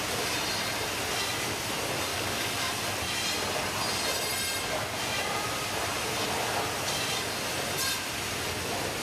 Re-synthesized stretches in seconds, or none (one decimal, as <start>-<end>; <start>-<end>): 2.1-2.7